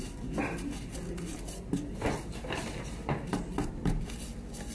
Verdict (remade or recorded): recorded